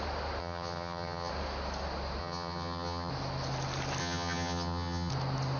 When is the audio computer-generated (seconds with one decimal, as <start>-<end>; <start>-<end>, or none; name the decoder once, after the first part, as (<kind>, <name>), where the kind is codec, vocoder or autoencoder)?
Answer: 0.4-1.3 (vocoder, HiFi-GAN); 2.2-3.1; 4.0-5.1